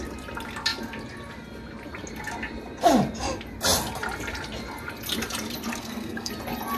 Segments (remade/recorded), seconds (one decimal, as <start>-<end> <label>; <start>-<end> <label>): 0.0-5.8 recorded; 5.8-6.3 remade; 6.3-6.8 recorded